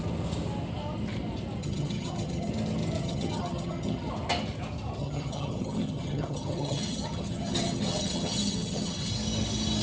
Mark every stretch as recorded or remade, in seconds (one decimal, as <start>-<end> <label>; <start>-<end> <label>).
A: 0.0-1.6 recorded; 1.6-2.5 remade; 2.5-3.0 recorded; 3.0-4.1 remade; 4.1-5.0 recorded; 5.0-9.1 remade; 9.1-9.8 recorded